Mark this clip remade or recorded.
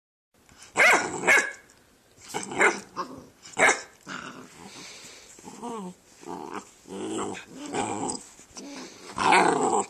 recorded